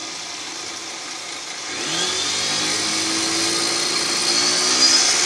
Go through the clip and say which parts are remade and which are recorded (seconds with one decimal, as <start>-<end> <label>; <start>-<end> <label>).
0.0-5.3 recorded